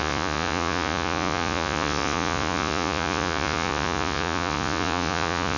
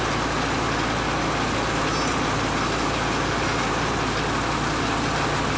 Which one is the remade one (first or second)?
first